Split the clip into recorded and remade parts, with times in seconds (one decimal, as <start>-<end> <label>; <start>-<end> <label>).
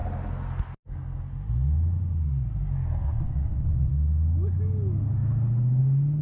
0.0-3.0 recorded; 3.0-3.9 remade; 3.9-6.2 recorded